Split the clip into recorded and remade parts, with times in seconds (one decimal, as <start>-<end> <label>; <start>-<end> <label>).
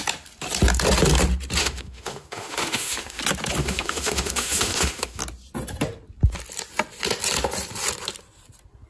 0.0-1.6 recorded; 1.6-3.2 remade; 3.2-3.6 recorded; 3.6-5.2 remade; 5.2-8.9 recorded